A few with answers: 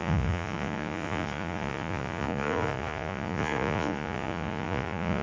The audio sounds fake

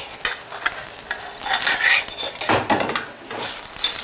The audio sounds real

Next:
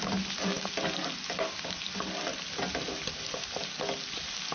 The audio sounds real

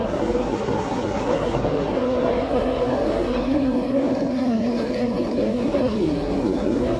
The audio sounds fake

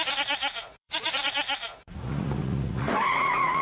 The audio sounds fake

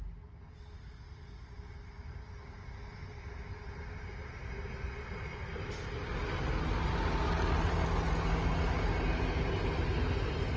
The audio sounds real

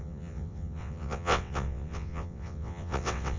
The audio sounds fake